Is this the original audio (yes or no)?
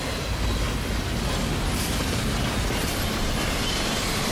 yes